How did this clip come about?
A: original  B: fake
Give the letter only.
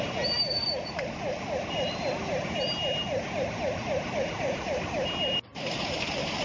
A